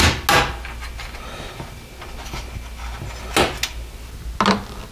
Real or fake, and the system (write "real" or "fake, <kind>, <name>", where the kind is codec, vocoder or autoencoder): real